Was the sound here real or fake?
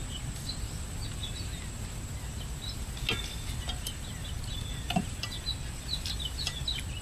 real